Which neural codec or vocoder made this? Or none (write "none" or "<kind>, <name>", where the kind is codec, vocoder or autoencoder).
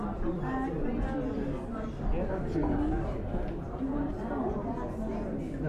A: none